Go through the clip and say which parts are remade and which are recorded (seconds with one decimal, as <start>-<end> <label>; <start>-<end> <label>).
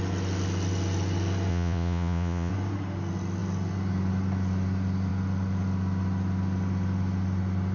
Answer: 0.0-1.5 recorded; 1.5-2.5 remade; 2.5-7.7 recorded